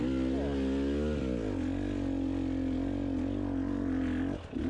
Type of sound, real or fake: real